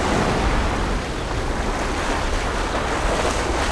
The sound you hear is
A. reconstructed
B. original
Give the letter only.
B